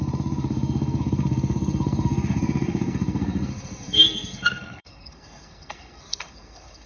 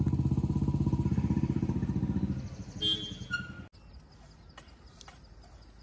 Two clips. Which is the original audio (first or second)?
second